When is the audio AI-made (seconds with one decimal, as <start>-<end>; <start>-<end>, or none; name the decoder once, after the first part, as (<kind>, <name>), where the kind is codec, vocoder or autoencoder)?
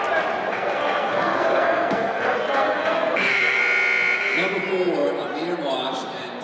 0.5-3.6 (codec, SNAC)